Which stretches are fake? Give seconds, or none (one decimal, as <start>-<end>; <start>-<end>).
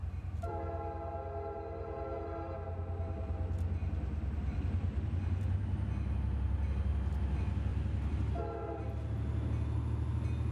0.0-0.6; 3.8-5.4; 7.7-8.6